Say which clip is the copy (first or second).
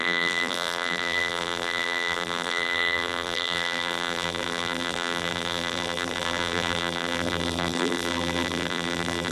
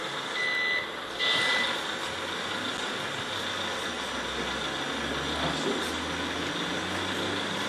first